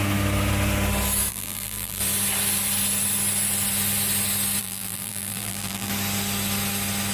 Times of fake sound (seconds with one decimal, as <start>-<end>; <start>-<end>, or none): 1.3-2.0; 4.6-5.9